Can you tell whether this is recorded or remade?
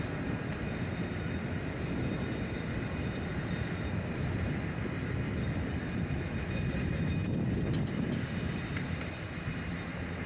recorded